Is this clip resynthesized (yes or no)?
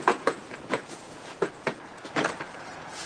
yes